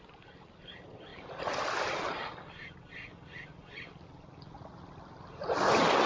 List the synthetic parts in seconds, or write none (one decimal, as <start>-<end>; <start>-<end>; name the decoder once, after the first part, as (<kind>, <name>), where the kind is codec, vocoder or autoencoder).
none